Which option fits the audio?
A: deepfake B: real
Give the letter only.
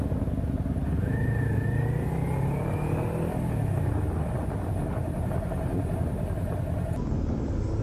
B